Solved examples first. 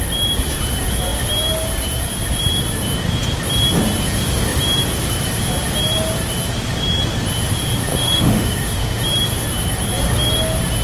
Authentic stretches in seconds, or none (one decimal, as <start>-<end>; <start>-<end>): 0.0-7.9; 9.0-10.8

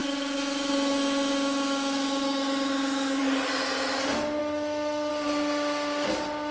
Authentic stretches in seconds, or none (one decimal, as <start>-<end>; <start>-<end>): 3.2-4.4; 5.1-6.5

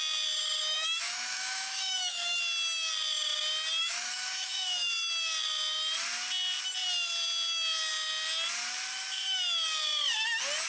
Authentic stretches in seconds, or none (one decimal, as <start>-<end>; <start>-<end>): 0.0-0.7; 2.4-3.8; 5.1-10.7

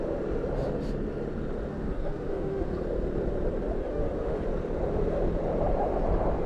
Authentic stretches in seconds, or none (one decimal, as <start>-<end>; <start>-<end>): 0.0-1.7; 2.7-3.8; 4.4-6.5

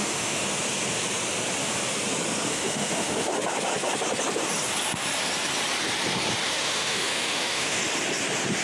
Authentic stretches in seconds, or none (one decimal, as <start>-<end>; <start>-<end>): 0.4-2.5; 3.3-6.5; 7.8-8.6